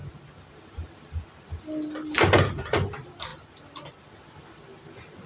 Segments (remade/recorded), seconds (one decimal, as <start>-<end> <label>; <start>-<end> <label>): 0.0-5.3 recorded